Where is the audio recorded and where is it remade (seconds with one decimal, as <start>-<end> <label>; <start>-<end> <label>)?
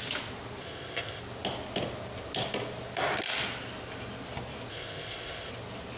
0.0-0.6 recorded; 0.6-1.2 remade; 1.2-4.7 recorded; 4.7-5.5 remade; 5.5-6.0 recorded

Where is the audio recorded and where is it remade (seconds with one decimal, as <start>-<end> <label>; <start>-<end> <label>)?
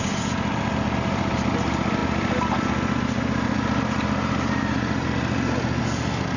0.0-6.4 recorded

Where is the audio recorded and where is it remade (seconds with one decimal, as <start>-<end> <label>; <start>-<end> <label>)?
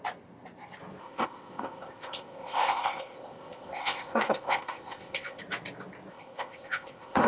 0.0-1.0 recorded; 1.0-5.4 remade; 5.4-6.1 recorded; 6.1-7.3 remade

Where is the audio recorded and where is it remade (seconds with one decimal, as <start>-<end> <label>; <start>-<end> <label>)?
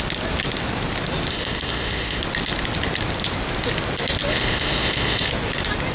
0.0-1.3 recorded; 1.3-2.2 remade; 2.2-4.3 recorded; 4.3-5.3 remade; 5.3-5.9 recorded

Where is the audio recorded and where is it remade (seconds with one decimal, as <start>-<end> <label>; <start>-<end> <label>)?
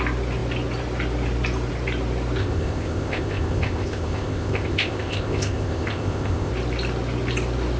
0.0-2.4 recorded; 2.4-6.5 remade; 6.5-7.8 recorded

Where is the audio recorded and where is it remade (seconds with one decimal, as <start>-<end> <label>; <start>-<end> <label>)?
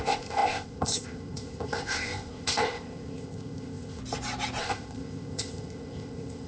0.0-4.0 remade; 4.0-4.6 recorded; 4.6-6.5 remade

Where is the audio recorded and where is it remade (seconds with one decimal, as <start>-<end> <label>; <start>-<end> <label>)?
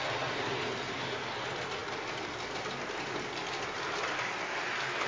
0.0-5.1 recorded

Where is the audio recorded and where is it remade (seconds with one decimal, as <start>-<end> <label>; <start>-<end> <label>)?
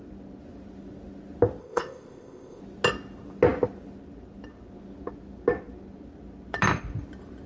0.0-1.6 recorded; 1.6-2.6 remade; 2.6-7.5 recorded